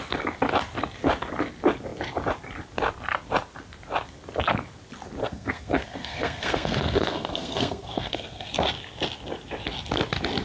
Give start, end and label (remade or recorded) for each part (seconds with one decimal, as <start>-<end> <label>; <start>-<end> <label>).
0.0-5.2 recorded; 5.2-8.5 remade; 8.5-10.4 recorded